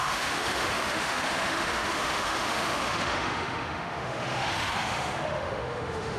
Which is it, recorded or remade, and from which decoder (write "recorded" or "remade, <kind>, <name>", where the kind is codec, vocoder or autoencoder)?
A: remade, autoencoder, DAC-VAE